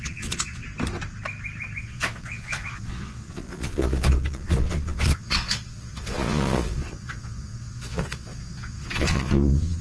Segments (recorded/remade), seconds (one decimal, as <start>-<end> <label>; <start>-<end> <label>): 0.0-0.6 remade; 0.6-1.8 recorded; 1.8-9.8 remade